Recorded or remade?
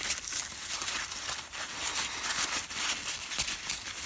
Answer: recorded